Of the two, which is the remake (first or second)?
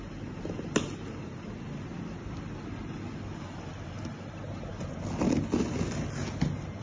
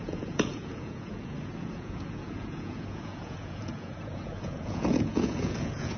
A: second